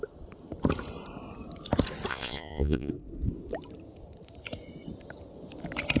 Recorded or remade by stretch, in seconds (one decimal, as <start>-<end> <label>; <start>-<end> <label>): 0.0-2.1 recorded; 2.1-2.9 remade; 2.9-6.0 recorded